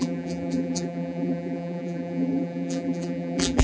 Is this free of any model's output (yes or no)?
no